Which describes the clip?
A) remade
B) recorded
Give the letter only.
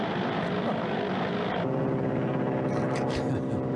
B